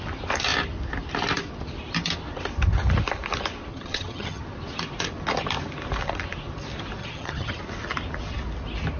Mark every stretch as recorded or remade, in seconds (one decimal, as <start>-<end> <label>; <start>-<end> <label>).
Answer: 0.0-3.7 recorded; 3.7-4.4 remade; 4.4-7.0 recorded; 7.0-7.6 remade; 7.6-9.0 recorded